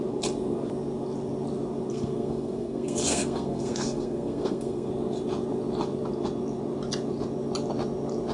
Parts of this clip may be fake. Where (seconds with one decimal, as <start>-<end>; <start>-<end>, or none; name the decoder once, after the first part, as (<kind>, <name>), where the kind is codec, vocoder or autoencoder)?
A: 1.9-4.9 (codec, SNAC)